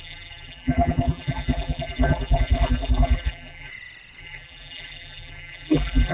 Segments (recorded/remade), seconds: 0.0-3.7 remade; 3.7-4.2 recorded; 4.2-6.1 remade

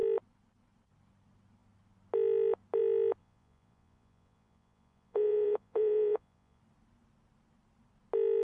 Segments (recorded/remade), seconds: 0.0-3.2 recorded; 3.2-6.6 remade; 6.6-8.4 recorded

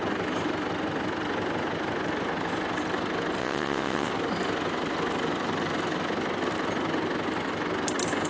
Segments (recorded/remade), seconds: 0.0-3.4 recorded; 3.4-4.1 remade; 4.1-8.3 recorded

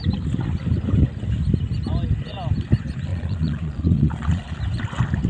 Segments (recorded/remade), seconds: 0.0-3.1 recorded; 3.1-4.6 remade; 4.6-5.3 recorded

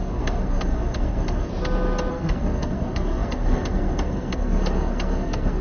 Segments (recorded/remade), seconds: 0.0-1.5 remade; 1.5-2.1 recorded; 2.1-5.6 remade

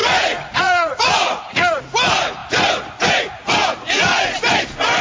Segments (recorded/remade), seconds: 0.0-1.8 remade; 1.8-3.6 recorded; 3.6-4.2 remade; 4.2-5.0 recorded

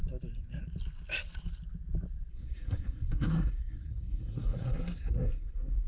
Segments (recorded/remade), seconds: 0.0-2.3 recorded; 2.3-5.9 remade

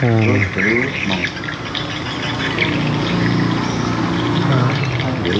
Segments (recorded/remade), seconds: 0.0-5.4 recorded